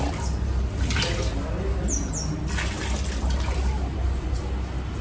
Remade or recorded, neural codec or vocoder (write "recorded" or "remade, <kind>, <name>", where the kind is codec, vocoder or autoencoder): recorded